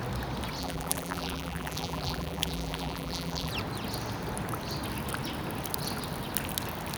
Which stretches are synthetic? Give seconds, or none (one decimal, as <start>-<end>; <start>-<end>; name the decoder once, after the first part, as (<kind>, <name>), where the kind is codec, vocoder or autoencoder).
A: 0.6-3.5 (vocoder, BigVGAN v2)